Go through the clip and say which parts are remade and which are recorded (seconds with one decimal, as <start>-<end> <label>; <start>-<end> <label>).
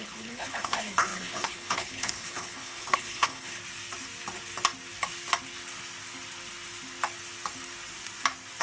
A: 0.0-3.6 remade; 3.6-8.6 recorded